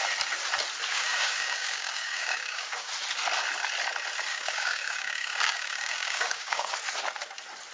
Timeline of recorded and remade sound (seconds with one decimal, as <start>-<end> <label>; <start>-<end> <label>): 0.0-0.9 recorded; 0.9-2.9 remade; 2.9-4.3 recorded; 4.3-6.7 remade; 6.7-7.7 recorded